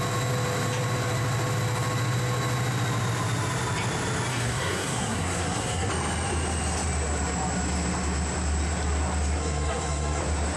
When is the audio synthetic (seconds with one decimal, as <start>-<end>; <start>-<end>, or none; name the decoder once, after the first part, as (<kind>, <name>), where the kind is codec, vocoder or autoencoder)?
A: 4.3-5.9 (codec, SNAC); 9.4-10.2